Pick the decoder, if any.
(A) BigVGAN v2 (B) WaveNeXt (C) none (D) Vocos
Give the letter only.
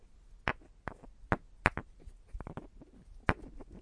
C